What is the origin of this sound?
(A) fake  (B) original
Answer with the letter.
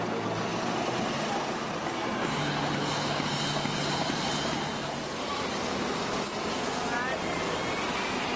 B